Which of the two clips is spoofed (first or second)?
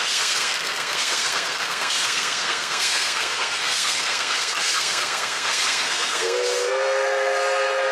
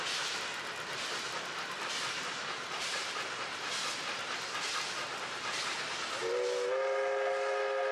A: first